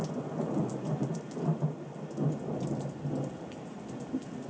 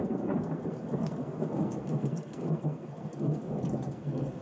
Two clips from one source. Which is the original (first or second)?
first